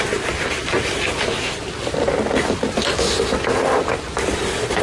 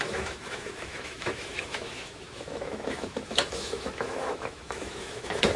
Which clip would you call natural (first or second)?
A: first